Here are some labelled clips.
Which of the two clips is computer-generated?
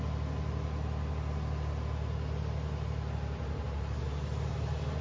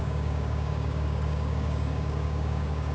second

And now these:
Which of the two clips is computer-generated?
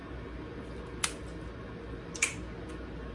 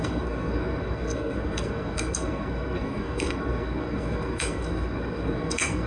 second